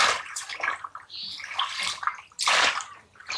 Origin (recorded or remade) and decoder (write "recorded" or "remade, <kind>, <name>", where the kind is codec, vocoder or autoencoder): recorded